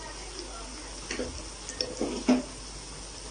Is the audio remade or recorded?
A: recorded